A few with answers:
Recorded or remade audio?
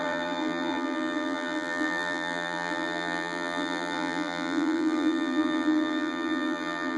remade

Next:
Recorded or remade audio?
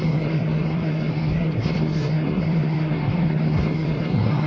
remade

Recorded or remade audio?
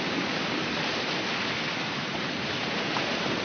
recorded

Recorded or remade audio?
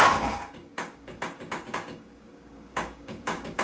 remade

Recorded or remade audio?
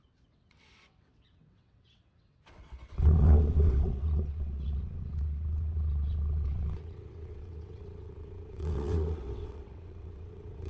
remade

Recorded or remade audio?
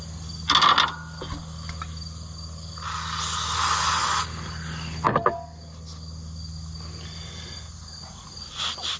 recorded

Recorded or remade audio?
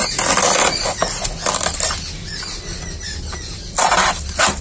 recorded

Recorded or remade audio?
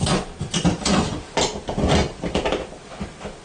recorded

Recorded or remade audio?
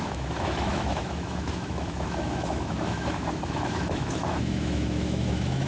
remade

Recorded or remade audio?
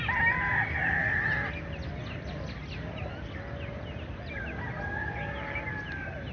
recorded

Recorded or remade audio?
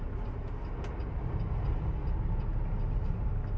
recorded